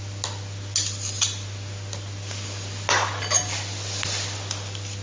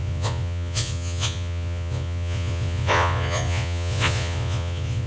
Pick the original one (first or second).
first